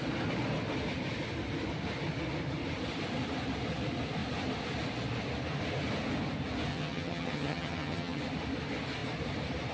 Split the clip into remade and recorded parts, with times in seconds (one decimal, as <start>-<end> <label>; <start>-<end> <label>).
0.0-6.7 recorded; 6.7-8.2 remade; 8.2-9.7 recorded